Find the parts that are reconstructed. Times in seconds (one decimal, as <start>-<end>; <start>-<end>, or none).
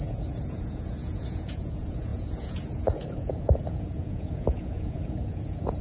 0.0-5.8